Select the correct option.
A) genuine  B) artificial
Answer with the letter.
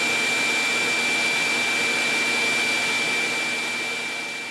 A